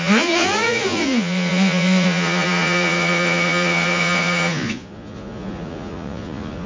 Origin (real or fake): fake